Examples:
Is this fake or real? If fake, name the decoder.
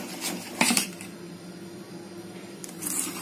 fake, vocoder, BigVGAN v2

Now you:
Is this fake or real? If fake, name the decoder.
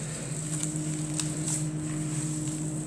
fake, vocoder, BigVGAN v2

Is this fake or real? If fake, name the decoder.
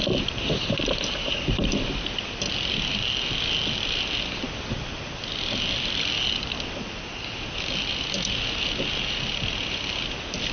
real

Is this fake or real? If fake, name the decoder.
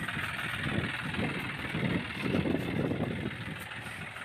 real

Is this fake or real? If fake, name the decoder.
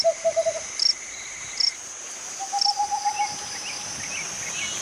real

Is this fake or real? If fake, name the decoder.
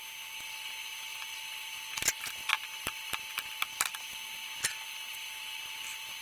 real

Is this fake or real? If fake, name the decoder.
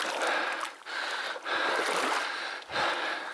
real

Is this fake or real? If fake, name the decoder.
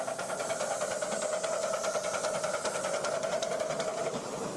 real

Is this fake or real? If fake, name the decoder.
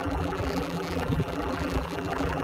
fake, vocoder, BigVGAN v2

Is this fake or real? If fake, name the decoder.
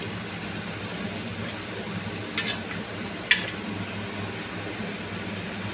real